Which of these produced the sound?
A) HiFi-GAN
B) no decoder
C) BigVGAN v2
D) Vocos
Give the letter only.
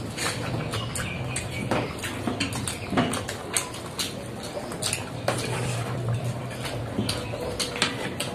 B